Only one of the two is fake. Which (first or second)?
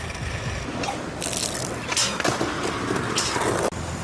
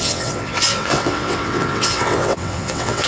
second